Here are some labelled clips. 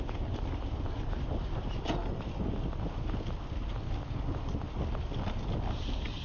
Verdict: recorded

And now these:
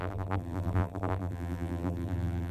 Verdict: remade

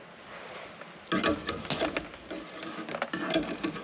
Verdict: recorded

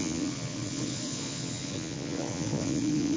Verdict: remade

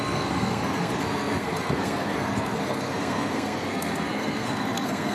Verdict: remade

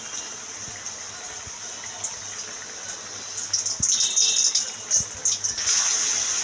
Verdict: recorded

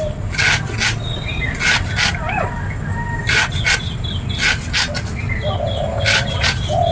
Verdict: recorded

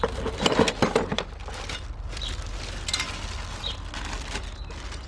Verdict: recorded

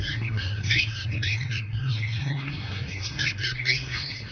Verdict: remade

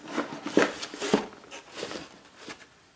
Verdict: recorded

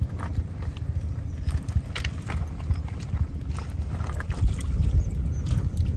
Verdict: recorded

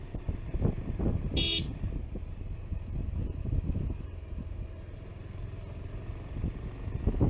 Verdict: recorded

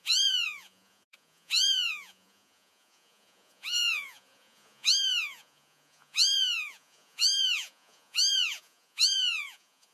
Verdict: remade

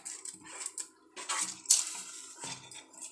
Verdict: recorded